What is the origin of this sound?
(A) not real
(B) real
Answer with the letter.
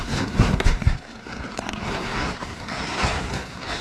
A